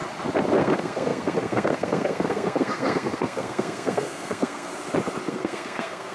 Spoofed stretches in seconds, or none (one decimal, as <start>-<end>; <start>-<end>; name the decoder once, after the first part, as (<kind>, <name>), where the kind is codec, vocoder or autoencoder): 0.6-4.7 (codec, SNAC); 5.3-6.1

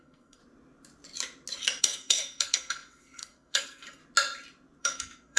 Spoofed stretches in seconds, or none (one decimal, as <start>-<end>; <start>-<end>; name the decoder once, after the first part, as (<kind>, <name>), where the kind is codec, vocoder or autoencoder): 0.0-0.4 (codec, SNAC); 1.8-4.0; 4.8-5.4

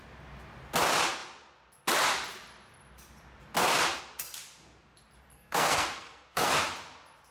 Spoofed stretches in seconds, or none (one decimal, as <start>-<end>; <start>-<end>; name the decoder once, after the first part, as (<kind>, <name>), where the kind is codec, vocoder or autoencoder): 5.3-6.5 (codec, SNAC)